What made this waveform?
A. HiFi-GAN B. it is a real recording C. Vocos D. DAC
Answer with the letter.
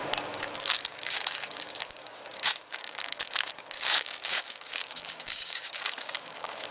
D